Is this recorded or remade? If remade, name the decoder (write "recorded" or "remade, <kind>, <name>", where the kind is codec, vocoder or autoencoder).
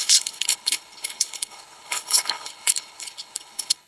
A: remade, codec, HILCodec